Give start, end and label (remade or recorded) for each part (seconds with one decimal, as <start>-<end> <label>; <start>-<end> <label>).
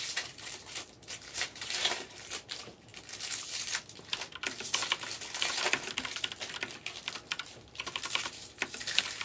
0.0-2.9 remade; 2.9-7.5 recorded; 7.5-9.2 remade